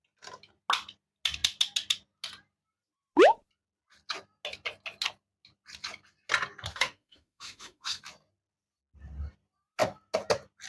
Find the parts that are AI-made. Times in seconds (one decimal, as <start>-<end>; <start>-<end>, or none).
6.7-8.0